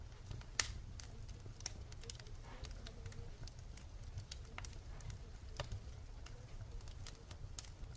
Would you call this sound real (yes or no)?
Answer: yes